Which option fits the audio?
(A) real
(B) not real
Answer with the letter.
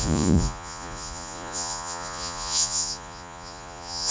B